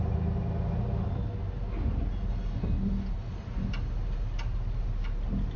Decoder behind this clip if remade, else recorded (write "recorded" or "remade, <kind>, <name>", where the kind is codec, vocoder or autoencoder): recorded